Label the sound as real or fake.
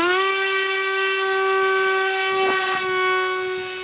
real